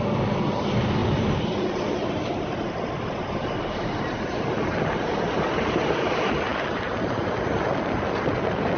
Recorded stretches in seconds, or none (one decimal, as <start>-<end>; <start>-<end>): 0.0-8.8